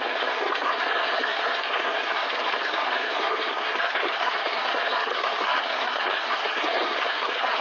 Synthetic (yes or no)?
yes